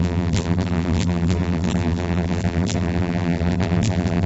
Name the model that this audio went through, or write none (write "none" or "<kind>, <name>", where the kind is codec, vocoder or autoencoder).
vocoder, BigVGAN v2